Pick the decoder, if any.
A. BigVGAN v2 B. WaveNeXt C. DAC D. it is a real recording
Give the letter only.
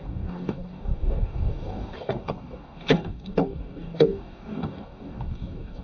C